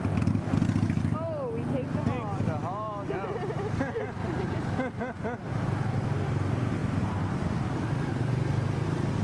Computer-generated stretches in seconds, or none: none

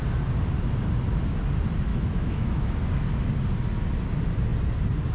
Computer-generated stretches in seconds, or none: 1.9-2.7 (autoencoder, DAC-VAE)

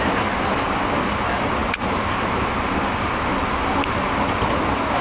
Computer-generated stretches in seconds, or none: none